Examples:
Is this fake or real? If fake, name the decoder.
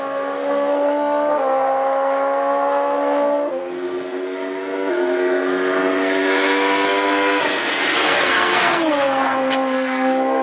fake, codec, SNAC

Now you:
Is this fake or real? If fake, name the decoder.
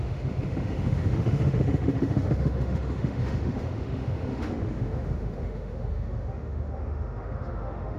fake, autoencoder, DAC-VAE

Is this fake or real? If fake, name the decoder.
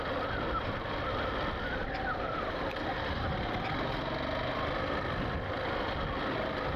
real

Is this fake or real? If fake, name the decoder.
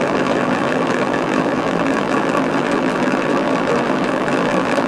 fake, vocoder, BigVGAN v2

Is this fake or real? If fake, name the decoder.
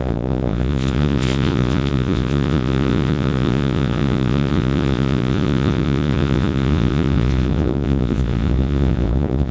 fake, vocoder, Vocos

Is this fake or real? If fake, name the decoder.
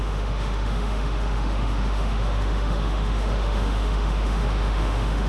fake, autoencoder, DAC-VAE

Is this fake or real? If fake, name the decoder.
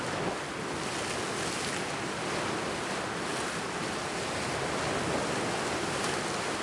real